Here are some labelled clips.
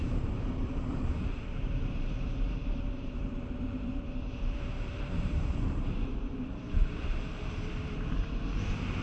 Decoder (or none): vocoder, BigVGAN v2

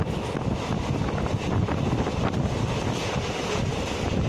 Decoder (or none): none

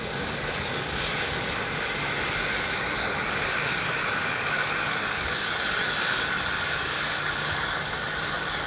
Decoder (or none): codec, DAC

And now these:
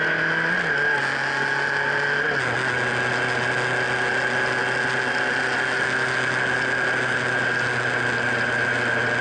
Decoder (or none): none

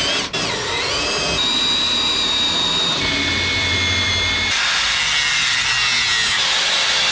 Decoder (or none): none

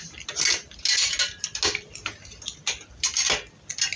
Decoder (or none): none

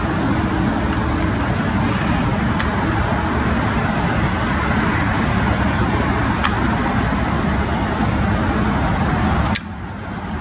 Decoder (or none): none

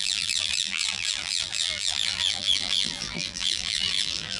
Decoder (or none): vocoder, BigVGAN v2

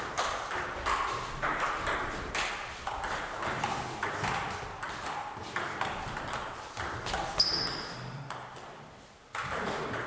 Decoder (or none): none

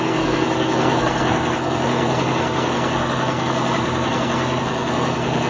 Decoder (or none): codec, SNAC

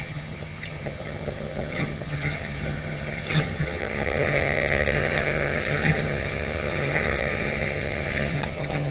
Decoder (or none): vocoder, HiFi-GAN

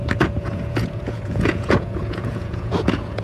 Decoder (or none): vocoder, Vocos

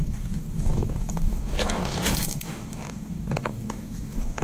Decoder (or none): codec, DAC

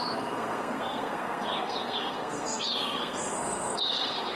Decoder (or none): codec, SNAC